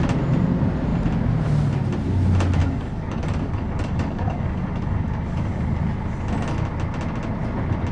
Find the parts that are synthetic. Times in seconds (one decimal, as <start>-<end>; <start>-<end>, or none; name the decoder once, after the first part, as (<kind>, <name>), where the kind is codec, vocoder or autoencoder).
2.6-5.8 (codec, DAC)